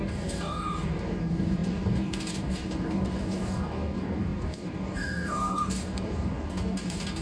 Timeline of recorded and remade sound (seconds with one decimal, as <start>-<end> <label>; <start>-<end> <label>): 0.0-7.2 remade